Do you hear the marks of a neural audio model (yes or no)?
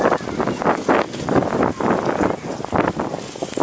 no